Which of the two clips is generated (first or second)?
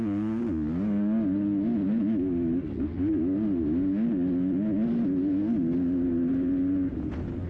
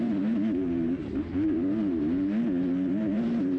second